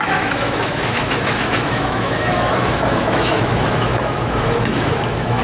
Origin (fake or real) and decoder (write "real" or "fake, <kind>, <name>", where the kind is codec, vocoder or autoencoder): fake, autoencoder, DAC-VAE